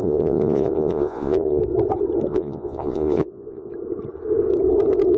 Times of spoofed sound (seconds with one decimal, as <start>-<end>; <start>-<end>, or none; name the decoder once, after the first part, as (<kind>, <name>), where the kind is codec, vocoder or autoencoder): 0.0-1.6 (vocoder, Vocos); 2.3-3.7